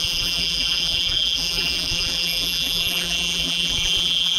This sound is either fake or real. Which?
fake